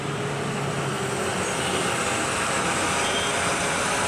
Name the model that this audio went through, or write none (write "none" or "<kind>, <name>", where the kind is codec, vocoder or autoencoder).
none